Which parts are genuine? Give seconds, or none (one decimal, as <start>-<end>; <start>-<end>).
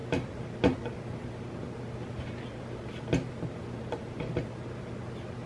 0.0-5.5